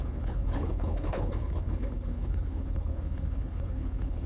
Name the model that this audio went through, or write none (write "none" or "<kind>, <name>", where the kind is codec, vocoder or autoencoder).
codec, HILCodec